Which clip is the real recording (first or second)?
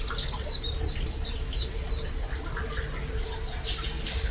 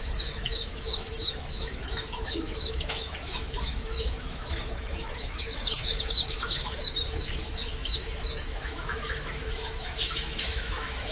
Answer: first